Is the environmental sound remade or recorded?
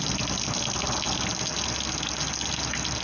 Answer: recorded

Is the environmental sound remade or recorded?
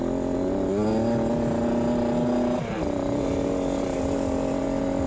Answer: recorded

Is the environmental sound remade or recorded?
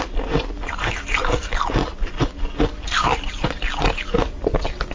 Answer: recorded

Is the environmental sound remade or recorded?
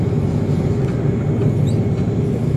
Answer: recorded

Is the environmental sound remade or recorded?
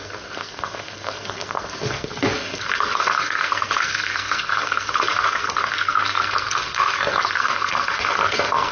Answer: remade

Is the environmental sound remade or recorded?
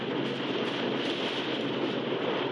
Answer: recorded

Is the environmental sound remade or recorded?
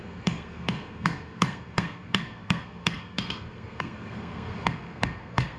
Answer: remade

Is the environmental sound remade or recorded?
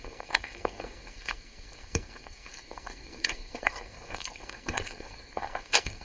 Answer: remade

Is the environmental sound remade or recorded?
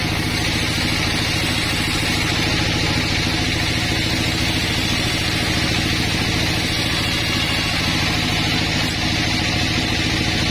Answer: recorded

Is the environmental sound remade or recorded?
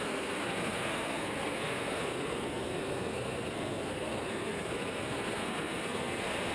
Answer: remade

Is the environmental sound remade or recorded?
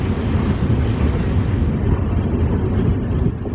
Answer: recorded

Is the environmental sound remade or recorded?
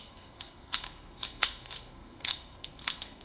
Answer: remade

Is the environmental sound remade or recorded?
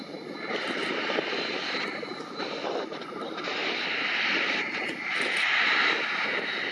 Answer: recorded